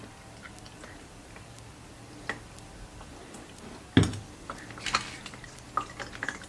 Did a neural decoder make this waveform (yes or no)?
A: no